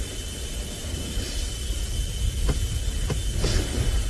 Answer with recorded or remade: recorded